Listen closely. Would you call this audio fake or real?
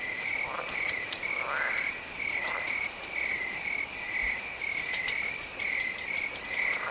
real